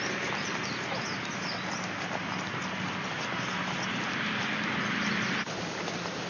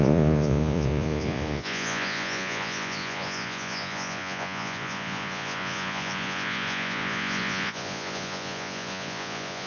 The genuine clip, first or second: first